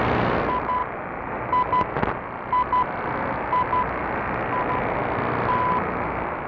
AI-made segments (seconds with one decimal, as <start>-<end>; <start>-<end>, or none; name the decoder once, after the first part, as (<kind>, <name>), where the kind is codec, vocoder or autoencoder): none